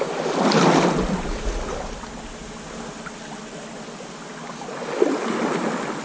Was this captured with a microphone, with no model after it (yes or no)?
yes